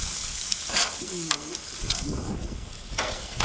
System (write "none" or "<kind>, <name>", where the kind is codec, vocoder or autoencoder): codec, SNAC